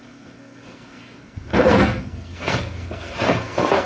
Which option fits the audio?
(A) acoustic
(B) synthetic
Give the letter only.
B